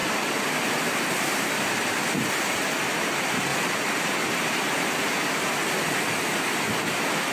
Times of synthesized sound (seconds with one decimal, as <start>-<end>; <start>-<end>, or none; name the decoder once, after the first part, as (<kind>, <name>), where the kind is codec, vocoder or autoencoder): 0.0-2.0 (vocoder, BigVGAN v2); 3.0-3.5